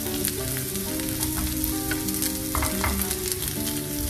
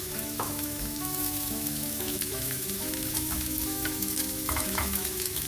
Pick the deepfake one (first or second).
second